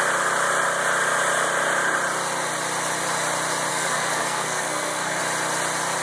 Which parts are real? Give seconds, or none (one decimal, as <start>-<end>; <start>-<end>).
0.0-3.7; 5.2-6.0